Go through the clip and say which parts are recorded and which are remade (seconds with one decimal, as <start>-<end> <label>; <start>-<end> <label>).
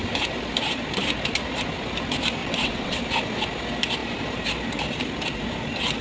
0.0-2.4 recorded; 2.4-3.0 remade; 3.0-6.0 recorded